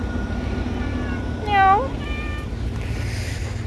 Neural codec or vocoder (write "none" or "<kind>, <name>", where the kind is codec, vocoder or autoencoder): none